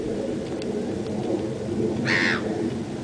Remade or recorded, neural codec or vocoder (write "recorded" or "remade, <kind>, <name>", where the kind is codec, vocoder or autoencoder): recorded